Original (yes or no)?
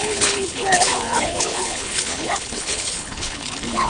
no